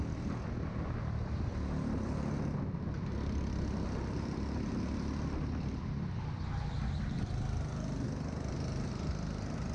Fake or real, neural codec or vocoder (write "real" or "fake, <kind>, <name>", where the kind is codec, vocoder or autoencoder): real